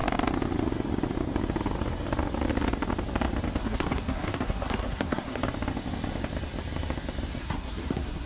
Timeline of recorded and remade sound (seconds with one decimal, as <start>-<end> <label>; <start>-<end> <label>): 0.0-3.6 recorded; 3.6-5.4 remade; 5.4-7.4 recorded; 7.4-8.3 remade